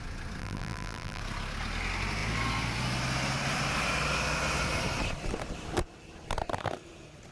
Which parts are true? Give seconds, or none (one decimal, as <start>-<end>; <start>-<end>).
0.0-0.4; 1.2-7.3